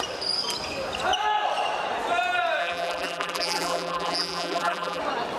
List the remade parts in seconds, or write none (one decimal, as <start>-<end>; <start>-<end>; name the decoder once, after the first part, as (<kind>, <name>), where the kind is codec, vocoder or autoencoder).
2.6-5.0 (vocoder, BigVGAN v2)